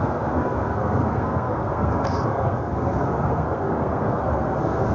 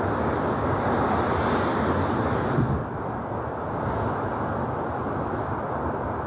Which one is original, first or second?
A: second